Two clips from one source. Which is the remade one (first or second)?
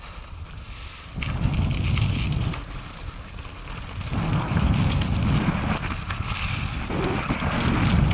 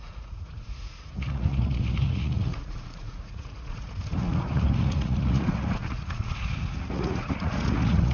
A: second